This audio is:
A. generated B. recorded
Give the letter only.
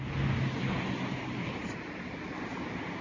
B